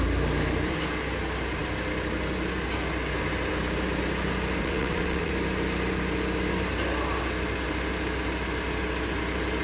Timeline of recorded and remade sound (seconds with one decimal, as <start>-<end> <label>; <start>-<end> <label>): 0.0-4.6 recorded; 4.6-5.3 remade; 5.3-9.6 recorded